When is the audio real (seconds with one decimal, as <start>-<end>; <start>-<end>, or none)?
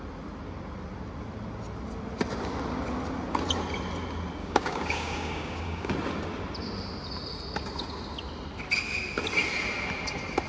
0.0-4.4; 5.9-10.5